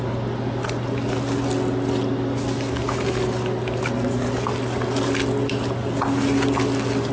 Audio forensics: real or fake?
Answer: real